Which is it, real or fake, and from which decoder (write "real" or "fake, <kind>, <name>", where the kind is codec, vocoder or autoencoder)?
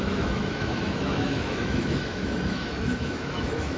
fake, autoencoder, DAC-VAE